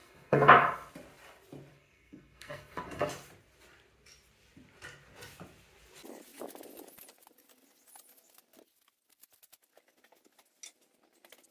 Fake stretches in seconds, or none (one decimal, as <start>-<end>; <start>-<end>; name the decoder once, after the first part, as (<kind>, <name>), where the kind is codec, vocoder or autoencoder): 0.0-0.9 (codec, SNAC); 1.7-3.1